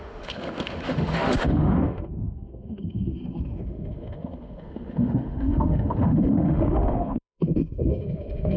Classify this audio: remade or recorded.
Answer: remade